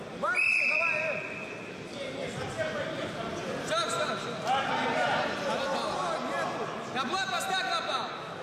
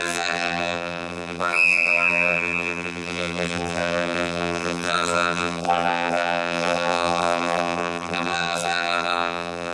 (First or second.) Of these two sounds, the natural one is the first